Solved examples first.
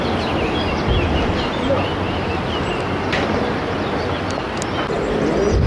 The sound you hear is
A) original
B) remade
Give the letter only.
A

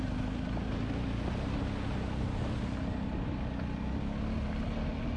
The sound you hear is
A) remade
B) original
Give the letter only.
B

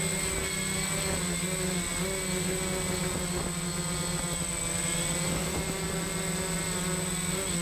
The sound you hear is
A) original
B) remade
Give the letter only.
A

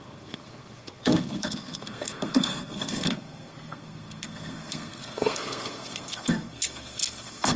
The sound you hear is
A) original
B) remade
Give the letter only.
B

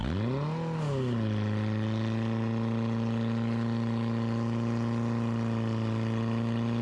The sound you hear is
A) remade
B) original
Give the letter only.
B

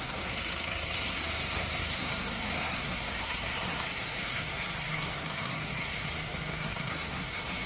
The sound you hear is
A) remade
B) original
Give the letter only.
A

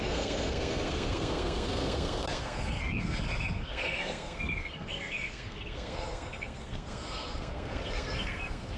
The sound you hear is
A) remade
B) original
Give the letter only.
A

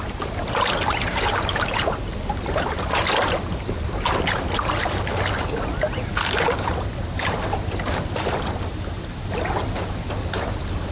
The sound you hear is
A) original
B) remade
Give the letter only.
A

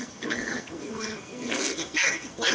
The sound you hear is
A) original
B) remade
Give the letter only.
B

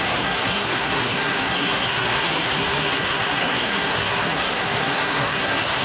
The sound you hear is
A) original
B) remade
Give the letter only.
B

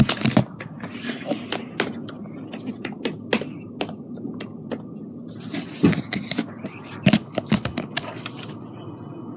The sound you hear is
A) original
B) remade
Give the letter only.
A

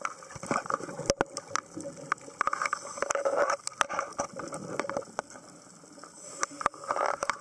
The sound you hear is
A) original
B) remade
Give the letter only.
A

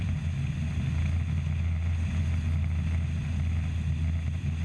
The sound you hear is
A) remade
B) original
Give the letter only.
B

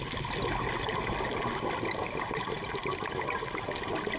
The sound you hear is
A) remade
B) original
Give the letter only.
B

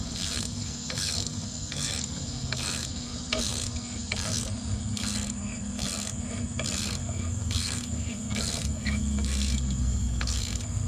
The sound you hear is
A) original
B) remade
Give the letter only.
B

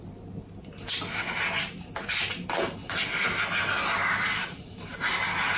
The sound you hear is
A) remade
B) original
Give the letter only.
B